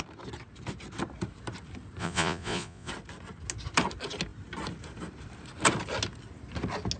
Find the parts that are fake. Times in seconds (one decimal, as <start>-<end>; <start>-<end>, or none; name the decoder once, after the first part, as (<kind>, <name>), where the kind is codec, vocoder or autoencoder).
2.0-2.9 (vocoder, Vocos)